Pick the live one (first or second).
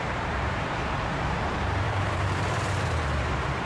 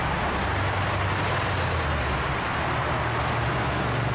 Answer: second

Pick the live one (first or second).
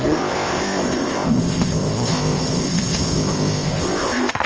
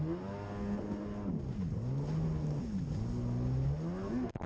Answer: second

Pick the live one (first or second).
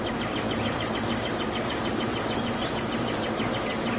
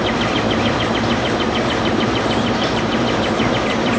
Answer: first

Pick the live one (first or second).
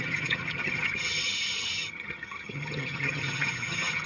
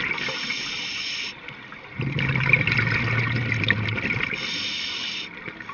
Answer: second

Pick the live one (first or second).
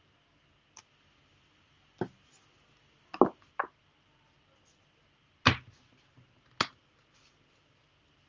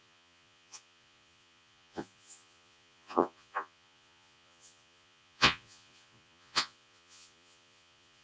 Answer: first